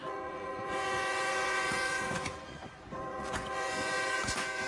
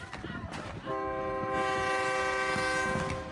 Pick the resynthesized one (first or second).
first